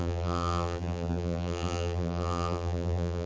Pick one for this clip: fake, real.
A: fake